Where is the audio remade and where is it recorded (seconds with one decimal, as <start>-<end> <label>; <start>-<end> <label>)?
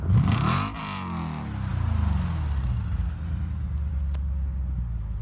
0.0-5.2 recorded